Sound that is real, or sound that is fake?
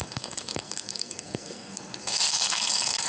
fake